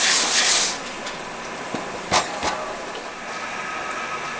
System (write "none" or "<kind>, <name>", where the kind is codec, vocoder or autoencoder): none